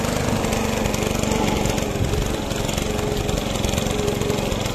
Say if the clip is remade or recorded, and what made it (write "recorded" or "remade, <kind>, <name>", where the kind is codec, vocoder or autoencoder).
recorded